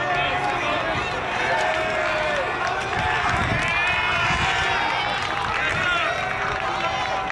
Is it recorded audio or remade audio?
recorded